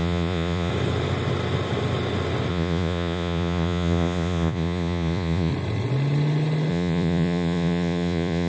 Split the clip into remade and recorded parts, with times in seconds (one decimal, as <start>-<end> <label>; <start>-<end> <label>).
0.0-0.7 remade; 0.7-2.5 recorded; 2.5-5.5 remade; 5.5-6.7 recorded; 6.7-8.5 remade